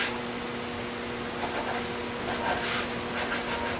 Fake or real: real